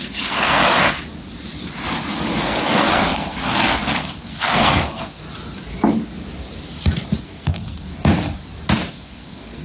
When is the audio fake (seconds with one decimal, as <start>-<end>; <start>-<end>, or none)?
0.0-0.6; 2.4-5.2; 7.2-7.9; 8.9-9.6